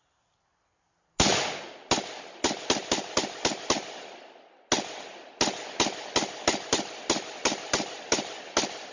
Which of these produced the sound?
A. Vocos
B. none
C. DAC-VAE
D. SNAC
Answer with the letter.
B